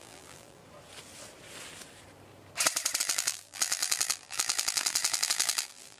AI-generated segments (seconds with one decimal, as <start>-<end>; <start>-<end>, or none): 0.0-0.6; 3.0-6.0